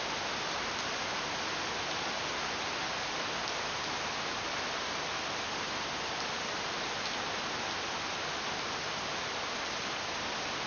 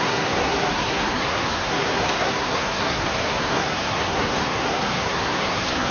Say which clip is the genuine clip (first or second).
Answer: first